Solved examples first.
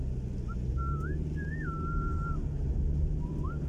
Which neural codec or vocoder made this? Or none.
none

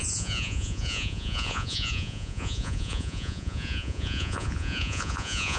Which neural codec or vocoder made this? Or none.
vocoder, Vocos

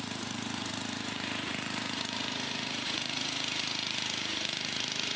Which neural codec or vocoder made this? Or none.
vocoder, Vocos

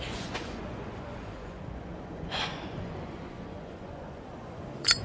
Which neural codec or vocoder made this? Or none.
vocoder, Vocos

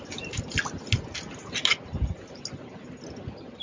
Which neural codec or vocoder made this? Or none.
none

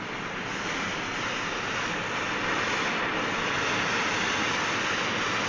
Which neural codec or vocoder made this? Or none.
none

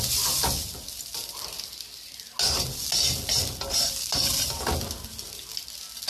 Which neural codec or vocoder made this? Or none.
none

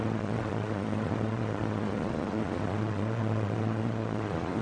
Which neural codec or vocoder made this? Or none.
vocoder, Vocos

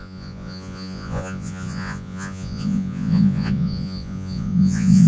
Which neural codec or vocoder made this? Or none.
vocoder, Vocos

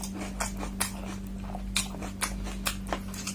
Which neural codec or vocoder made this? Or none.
none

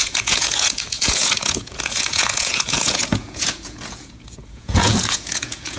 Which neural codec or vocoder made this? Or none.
vocoder, Vocos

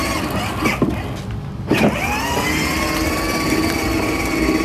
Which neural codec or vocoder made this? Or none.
none